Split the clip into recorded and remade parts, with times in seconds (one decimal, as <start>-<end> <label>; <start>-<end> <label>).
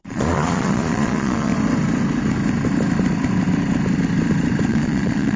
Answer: 0.0-1.5 remade; 1.5-4.7 recorded; 4.7-5.4 remade